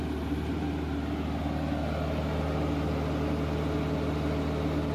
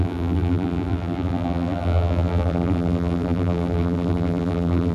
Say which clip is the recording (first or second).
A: first